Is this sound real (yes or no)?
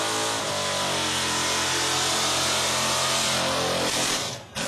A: yes